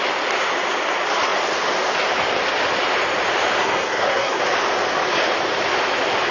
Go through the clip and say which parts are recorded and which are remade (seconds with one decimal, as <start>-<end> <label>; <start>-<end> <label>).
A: 0.0-3.6 recorded; 3.6-4.4 remade; 4.4-6.3 recorded